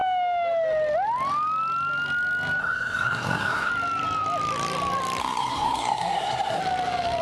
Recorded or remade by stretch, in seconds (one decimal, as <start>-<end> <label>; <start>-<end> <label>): 0.0-2.6 recorded; 2.6-3.7 remade; 3.7-5.2 recorded; 5.2-6.6 remade; 6.6-7.2 recorded